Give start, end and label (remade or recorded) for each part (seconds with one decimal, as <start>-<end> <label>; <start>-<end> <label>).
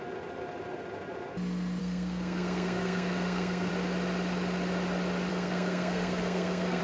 0.0-1.8 recorded; 1.8-3.7 remade; 3.7-5.3 recorded; 5.3-6.8 remade